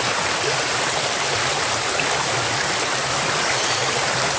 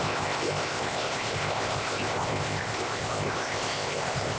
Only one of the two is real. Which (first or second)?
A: first